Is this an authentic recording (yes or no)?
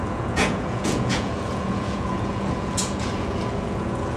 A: no